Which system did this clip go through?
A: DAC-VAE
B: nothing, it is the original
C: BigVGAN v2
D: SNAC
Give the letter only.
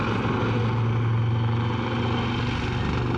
B